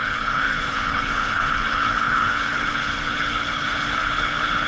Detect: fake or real fake